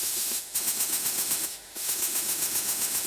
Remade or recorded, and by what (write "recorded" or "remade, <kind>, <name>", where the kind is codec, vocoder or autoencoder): remade, autoencoder, DAC-VAE